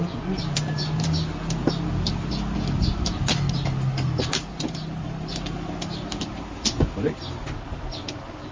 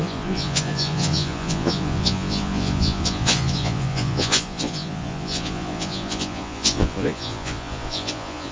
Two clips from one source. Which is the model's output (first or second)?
second